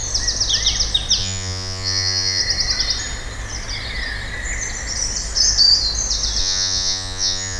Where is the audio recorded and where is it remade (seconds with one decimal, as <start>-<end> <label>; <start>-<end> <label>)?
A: 0.0-1.2 recorded; 1.2-2.4 remade; 2.4-6.4 recorded; 6.4-7.6 remade